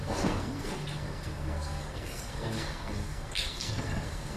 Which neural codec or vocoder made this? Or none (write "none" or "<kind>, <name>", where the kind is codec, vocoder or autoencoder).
codec, SNAC